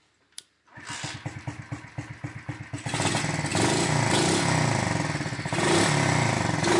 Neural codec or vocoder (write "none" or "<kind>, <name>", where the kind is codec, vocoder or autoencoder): none